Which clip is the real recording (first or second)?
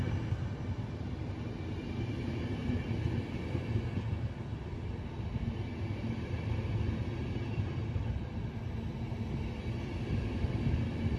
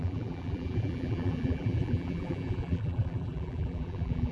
first